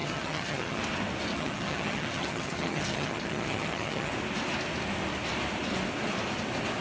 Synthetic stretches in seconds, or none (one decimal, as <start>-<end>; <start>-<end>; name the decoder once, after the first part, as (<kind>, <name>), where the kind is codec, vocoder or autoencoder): 0.0-0.8 (vocoder, HiFi-GAN); 1.3-4.1